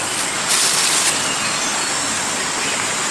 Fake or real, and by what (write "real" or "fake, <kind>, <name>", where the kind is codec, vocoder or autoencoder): real